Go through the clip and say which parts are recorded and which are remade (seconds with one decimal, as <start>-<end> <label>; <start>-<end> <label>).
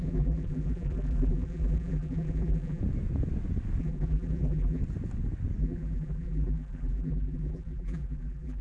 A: 0.0-2.8 remade; 2.8-3.8 recorded; 3.8-4.8 remade; 4.8-5.6 recorded; 5.6-8.6 remade